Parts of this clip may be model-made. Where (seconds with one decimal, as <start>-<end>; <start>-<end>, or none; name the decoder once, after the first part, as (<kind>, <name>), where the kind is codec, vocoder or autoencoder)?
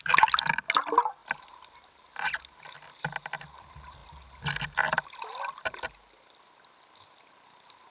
none